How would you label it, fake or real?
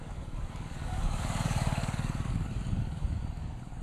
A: fake